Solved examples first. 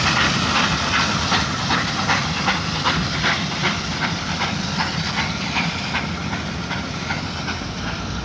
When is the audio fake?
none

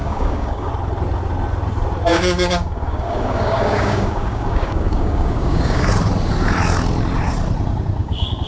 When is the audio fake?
0.0-0.7 (codec, DAC); 2.1-5.9; 8.0-8.5

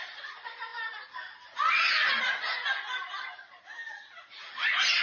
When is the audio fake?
none

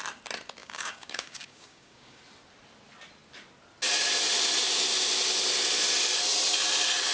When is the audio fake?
0.6-2.2 (codec, DAC)

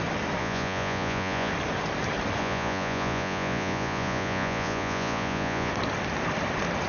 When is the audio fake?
0.4-1.5 (vocoder, Vocos); 2.4-5.7

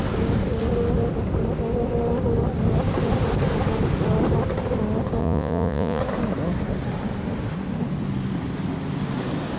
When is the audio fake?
5.2-6.0 (vocoder, Vocos)

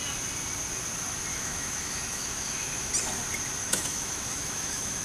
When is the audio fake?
1.3-2.9 (autoencoder, DAC-VAE); 3.6-5.0